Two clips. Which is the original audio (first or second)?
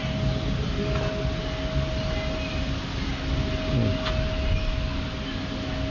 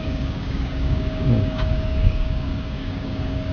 first